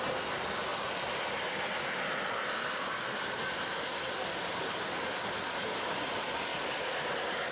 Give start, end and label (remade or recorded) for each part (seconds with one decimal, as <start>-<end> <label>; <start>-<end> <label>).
0.0-7.5 recorded